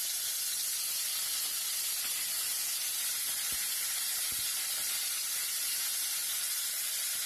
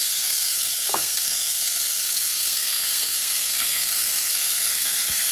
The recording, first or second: first